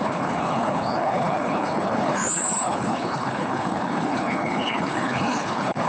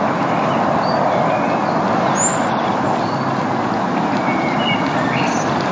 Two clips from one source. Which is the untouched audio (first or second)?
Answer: second